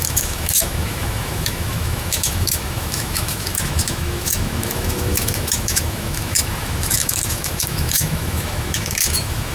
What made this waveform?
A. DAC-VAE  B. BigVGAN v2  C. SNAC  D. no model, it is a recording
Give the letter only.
A